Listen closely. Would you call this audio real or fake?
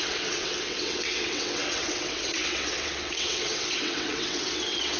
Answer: fake